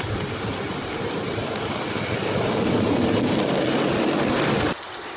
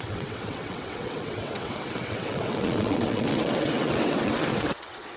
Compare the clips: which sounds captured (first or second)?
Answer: first